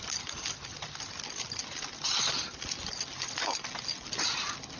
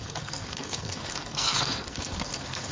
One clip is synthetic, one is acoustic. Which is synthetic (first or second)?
second